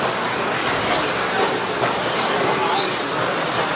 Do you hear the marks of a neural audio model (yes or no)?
no